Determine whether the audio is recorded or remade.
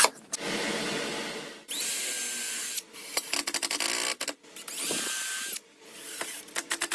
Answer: recorded